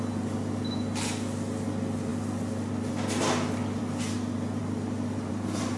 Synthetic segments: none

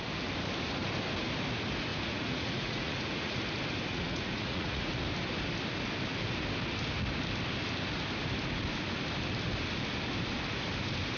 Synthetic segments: 1.9-3.4 (vocoder, Vocos); 3.9-4.9

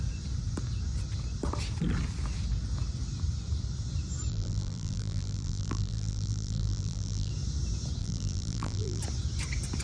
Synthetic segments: 4.3-7.3 (vocoder, BigVGAN v2); 8.0-9.0

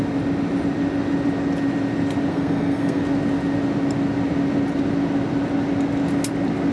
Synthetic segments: 2.3-3.0 (codec, SNAC)

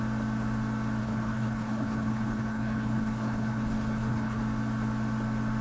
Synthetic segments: 1.0-4.4 (codec, HILCodec)